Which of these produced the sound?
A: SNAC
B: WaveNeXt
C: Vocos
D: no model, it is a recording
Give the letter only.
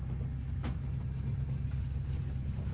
D